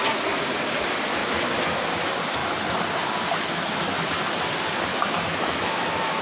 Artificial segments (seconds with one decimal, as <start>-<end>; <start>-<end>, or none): 1.2-2.0; 4.9-6.2